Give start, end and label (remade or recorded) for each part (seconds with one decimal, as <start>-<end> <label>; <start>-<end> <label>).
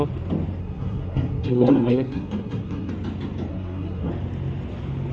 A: 0.0-0.6 recorded; 0.6-2.9 remade; 2.9-3.5 recorded; 3.5-4.1 remade; 4.1-5.1 recorded